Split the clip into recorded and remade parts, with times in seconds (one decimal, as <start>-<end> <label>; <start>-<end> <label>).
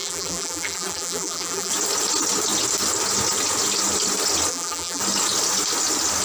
0.0-1.7 remade; 1.7-4.5 recorded; 4.5-5.0 remade; 5.0-6.2 recorded